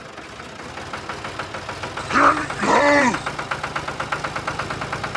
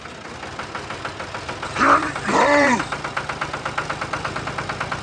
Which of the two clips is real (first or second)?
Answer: first